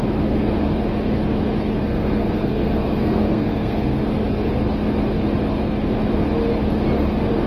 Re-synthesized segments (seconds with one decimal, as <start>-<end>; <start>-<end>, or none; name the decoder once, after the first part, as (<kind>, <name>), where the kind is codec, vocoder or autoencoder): 1.8-4.0 (codec, SNAC)